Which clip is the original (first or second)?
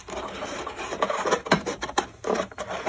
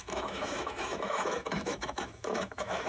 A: first